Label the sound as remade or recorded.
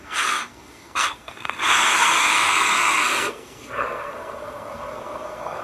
remade